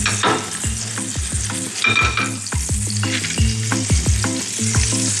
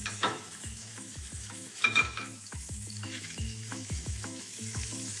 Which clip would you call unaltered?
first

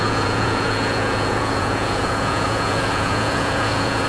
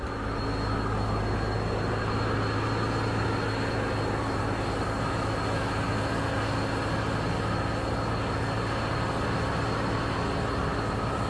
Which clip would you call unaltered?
second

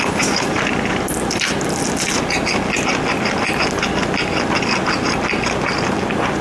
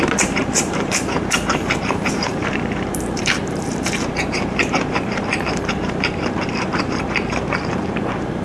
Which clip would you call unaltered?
first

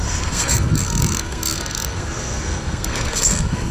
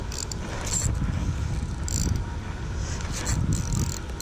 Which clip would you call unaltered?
second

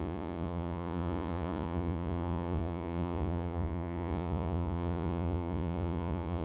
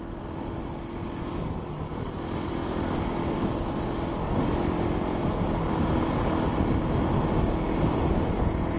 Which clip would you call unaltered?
second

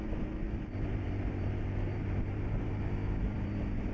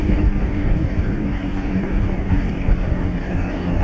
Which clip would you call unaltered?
first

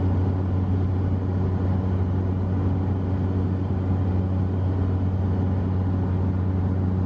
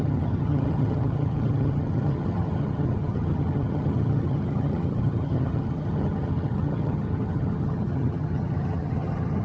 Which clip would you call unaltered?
first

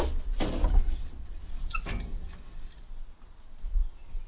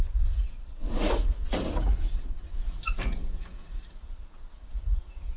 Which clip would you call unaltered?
first